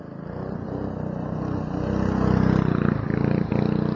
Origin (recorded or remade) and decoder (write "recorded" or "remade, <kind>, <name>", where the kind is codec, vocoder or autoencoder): recorded